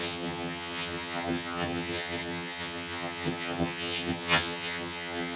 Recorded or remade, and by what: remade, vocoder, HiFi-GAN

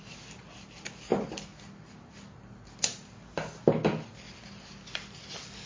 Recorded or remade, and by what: recorded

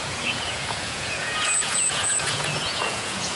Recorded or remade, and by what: remade, vocoder, Vocos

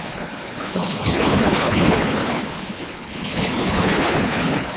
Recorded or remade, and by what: remade, codec, HILCodec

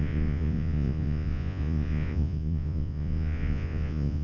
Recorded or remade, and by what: remade, vocoder, Vocos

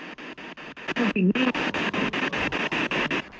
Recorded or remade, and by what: recorded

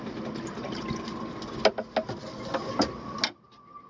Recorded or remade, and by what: recorded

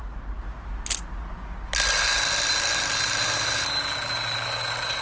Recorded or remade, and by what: recorded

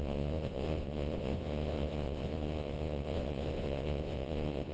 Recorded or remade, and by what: remade, vocoder, Vocos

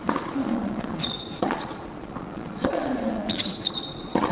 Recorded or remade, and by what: remade, vocoder, Vocos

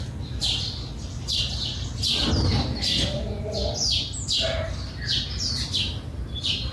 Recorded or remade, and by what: recorded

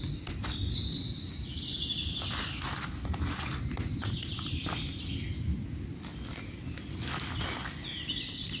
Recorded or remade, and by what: recorded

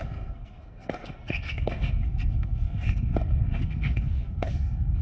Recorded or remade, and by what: remade, codec, SNAC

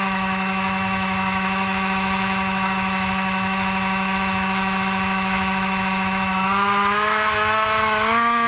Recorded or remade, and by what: remade, autoencoder, DAC-VAE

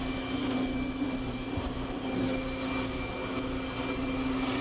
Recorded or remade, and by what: recorded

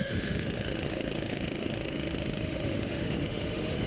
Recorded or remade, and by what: remade, autoencoder, DAC-VAE